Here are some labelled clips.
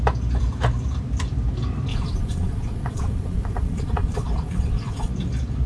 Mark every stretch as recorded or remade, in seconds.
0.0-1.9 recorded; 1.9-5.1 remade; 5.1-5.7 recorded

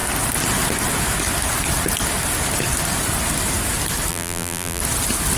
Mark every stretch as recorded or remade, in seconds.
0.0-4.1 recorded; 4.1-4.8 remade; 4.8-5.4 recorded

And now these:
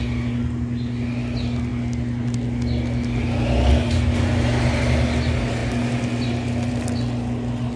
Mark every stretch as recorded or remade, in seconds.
0.0-7.8 recorded

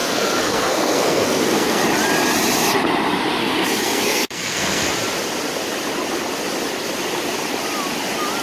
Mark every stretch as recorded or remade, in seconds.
0.0-1.8 remade; 1.8-3.4 recorded; 3.4-4.9 remade; 4.9-8.4 recorded

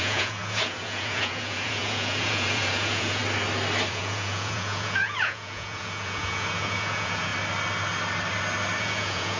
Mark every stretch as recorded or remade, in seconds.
0.0-3.2 remade; 3.2-3.9 recorded; 3.9-7.3 remade; 7.3-8.8 recorded; 8.8-9.4 remade

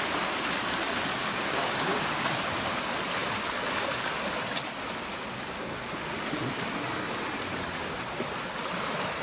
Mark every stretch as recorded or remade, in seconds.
0.0-1.2 recorded; 1.2-2.2 remade; 2.2-9.2 recorded

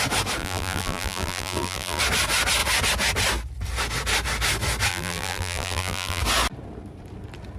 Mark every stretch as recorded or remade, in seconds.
0.0-0.4 recorded; 0.4-2.0 remade; 2.0-4.9 recorded; 4.9-6.2 remade; 6.2-7.6 recorded